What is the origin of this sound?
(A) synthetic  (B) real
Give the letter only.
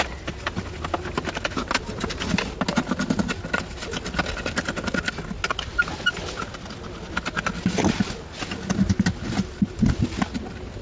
B